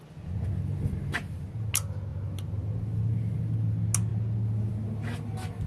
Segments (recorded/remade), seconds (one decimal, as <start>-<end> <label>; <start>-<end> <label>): 0.0-5.7 recorded